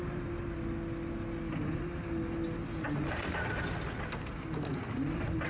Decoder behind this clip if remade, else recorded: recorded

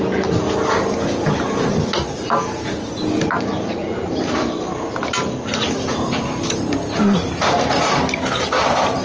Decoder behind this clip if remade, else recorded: recorded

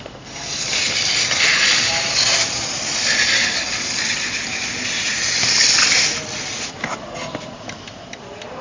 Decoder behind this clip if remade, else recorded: recorded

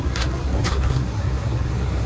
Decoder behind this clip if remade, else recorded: remade, codec, SNAC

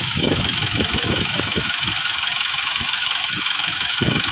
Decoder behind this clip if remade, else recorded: remade, autoencoder, DAC-VAE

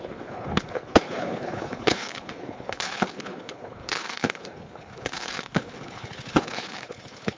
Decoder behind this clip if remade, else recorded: remade, codec, HILCodec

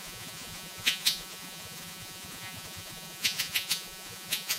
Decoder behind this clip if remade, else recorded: remade, vocoder, Vocos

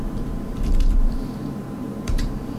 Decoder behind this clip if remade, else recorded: remade, vocoder, BigVGAN v2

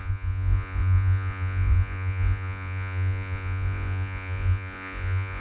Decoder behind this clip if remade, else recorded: remade, vocoder, Vocos